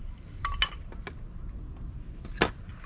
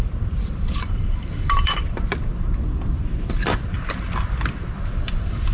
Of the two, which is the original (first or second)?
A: first